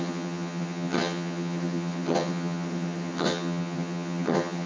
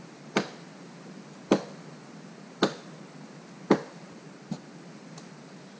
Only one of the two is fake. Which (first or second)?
first